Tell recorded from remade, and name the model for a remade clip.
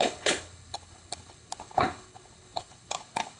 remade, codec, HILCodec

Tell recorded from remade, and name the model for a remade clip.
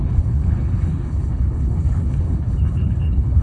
remade, codec, HILCodec